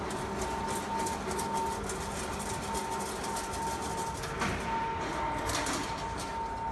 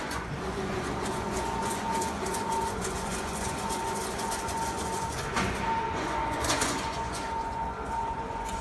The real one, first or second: first